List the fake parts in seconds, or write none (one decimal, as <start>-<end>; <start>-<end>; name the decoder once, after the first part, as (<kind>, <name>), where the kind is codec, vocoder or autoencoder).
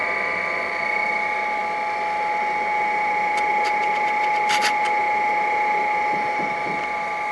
0.0-0.7 (vocoder, BigVGAN v2)